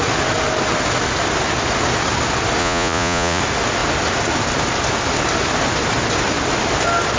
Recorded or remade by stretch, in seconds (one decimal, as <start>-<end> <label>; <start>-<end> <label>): 0.0-2.6 recorded; 2.6-3.4 remade; 3.4-7.2 recorded